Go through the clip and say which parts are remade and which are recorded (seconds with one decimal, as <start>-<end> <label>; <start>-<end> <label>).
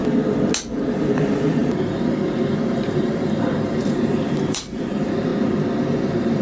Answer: 0.0-0.6 recorded; 0.6-1.6 remade; 1.6-2.5 recorded; 2.5-5.3 remade; 5.3-5.8 recorded; 5.8-6.4 remade